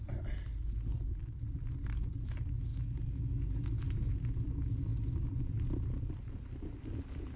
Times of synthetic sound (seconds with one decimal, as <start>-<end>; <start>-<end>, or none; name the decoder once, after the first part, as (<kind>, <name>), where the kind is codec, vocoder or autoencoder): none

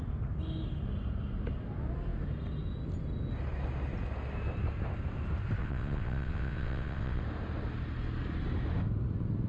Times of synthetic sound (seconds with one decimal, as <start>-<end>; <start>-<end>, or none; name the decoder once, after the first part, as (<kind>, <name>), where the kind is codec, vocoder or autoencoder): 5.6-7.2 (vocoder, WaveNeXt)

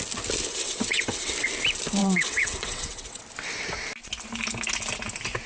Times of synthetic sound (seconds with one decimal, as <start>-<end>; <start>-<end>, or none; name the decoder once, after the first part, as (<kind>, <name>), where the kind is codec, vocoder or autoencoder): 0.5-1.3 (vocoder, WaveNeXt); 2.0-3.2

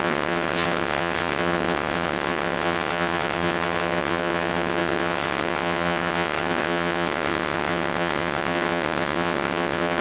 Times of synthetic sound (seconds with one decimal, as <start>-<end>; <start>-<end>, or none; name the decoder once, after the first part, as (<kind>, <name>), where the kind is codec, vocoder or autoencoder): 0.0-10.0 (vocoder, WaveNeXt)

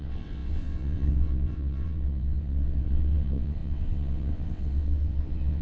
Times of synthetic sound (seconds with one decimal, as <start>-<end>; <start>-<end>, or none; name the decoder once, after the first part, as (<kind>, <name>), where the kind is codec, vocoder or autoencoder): 0.0-5.6 (vocoder, WaveNeXt)

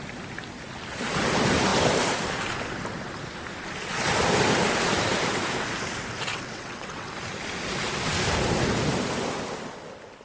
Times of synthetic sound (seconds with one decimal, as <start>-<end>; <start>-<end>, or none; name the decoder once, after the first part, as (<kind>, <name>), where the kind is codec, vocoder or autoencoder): 6.3-7.1 (vocoder, WaveNeXt)

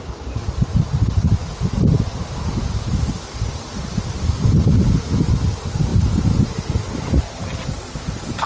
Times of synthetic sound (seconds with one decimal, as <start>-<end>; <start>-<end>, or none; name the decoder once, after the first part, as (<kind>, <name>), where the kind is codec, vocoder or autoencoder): none